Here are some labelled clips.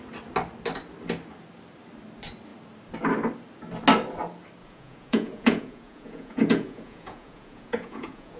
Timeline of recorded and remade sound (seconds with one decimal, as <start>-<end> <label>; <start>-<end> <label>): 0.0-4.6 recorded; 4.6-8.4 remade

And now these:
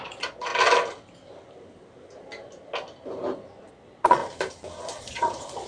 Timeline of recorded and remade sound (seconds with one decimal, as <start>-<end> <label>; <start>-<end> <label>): 0.0-0.5 remade; 0.5-3.7 recorded; 3.7-4.2 remade; 4.2-5.0 recorded; 5.0-5.7 remade

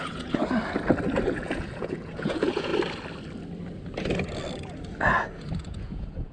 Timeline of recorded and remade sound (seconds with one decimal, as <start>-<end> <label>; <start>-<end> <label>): 0.0-0.4 remade; 0.4-1.2 recorded; 1.2-2.7 remade; 2.7-5.6 recorded; 5.6-6.3 remade

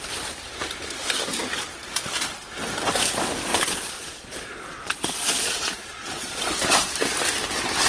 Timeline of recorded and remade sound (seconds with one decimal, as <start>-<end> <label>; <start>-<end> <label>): 0.0-3.5 recorded; 3.5-6.5 remade; 6.5-7.9 recorded

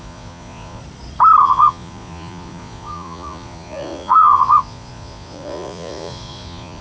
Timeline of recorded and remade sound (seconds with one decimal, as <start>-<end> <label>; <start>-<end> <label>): 0.0-0.8 remade; 0.8-1.4 recorded; 1.4-6.8 remade

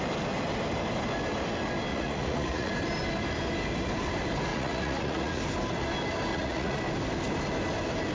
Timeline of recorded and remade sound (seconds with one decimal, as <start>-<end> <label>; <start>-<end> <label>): 0.0-1.9 recorded; 1.9-2.7 remade; 2.7-4.5 recorded; 4.5-5.4 remade; 5.4-6.3 recorded; 6.3-6.8 remade; 6.8-8.1 recorded